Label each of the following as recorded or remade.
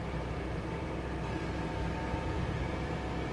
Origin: remade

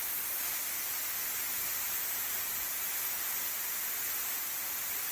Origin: recorded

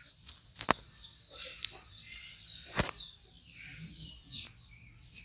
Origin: remade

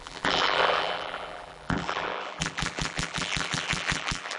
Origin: remade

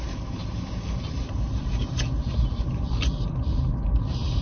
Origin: remade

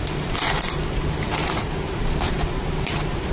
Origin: remade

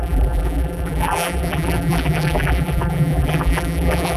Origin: remade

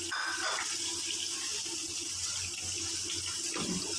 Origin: recorded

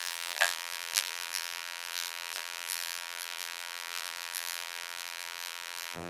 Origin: remade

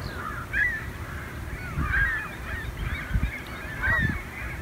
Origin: remade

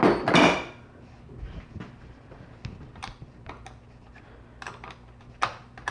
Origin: recorded